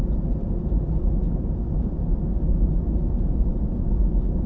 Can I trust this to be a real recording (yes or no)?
yes